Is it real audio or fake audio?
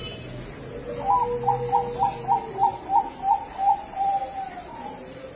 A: real